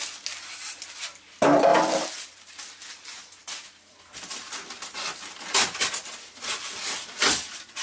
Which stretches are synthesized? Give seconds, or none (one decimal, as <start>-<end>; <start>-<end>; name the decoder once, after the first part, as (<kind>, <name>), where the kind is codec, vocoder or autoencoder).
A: none